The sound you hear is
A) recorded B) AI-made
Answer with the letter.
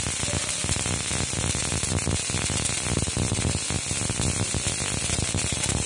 A